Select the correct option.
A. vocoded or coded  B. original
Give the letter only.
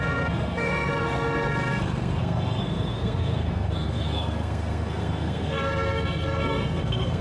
A